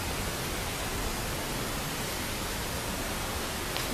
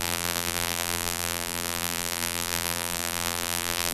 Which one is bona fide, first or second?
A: first